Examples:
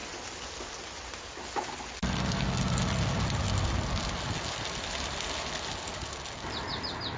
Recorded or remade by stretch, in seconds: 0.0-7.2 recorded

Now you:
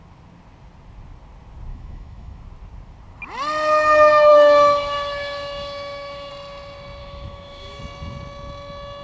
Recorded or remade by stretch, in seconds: 0.0-1.7 recorded; 1.7-2.4 remade; 2.4-4.3 recorded; 4.3-6.3 remade; 6.3-7.0 recorded; 7.0-7.8 remade; 7.8-9.0 recorded

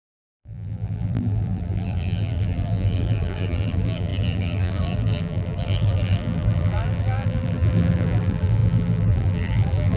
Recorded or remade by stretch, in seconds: 0.0-10.0 remade

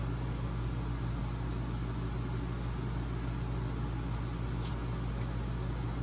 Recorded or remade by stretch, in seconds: 0.0-6.0 recorded

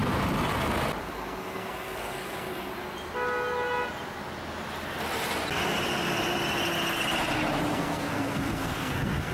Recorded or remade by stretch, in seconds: 0.0-1.0 recorded; 1.0-2.7 remade; 2.7-7.7 recorded; 7.7-9.3 remade

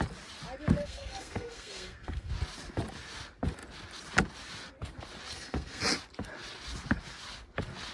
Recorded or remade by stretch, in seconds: 0.0-0.8 recorded; 0.8-2.3 remade; 2.3-5.3 recorded; 5.3-5.8 remade; 5.8-7.9 recorded